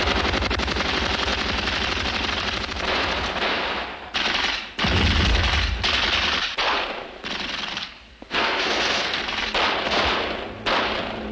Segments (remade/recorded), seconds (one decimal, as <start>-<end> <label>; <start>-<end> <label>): 0.0-7.7 recorded; 7.7-9.2 remade; 9.2-11.3 recorded